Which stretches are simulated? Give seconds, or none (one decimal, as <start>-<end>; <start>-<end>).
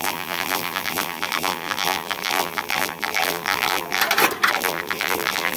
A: 0.0-4.0; 4.5-5.6